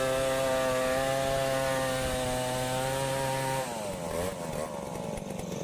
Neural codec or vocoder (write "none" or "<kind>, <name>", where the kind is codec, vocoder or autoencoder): none